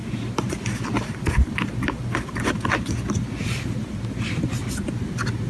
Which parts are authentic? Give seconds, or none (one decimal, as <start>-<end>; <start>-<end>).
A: 0.0-5.5